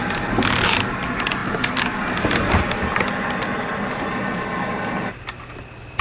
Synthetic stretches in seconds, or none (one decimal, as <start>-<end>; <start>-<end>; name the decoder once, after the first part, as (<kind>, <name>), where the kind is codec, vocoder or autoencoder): none